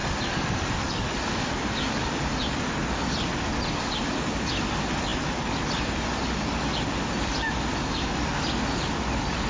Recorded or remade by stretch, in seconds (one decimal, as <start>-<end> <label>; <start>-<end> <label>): 0.0-9.5 recorded